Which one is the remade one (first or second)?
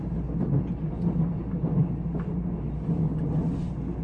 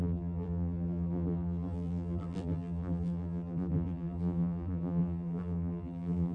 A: second